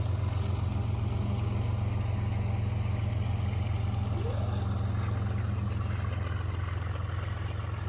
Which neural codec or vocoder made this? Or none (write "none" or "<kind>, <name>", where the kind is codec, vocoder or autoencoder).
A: none